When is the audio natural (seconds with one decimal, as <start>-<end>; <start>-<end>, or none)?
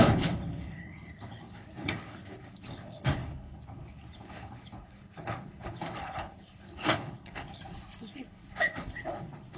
none